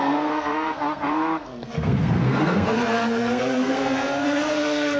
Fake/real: fake